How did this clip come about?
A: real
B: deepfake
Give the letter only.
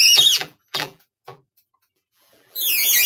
B